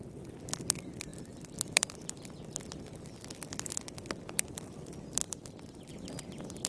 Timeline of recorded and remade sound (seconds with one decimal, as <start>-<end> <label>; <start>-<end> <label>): 0.0-6.7 recorded